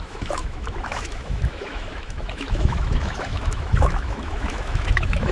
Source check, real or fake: fake